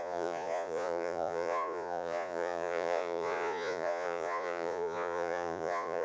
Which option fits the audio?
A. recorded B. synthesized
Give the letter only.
B